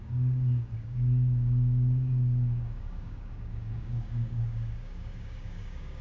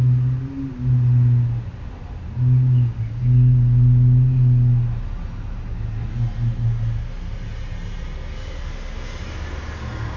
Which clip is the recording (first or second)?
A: second